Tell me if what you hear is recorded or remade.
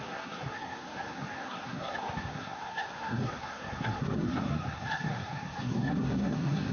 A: remade